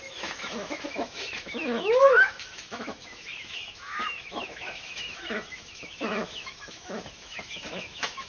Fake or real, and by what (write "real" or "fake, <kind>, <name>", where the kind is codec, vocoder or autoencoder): fake, autoencoder, DAC-VAE